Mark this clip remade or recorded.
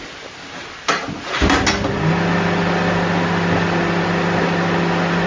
recorded